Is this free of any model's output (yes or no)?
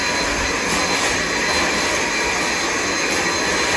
yes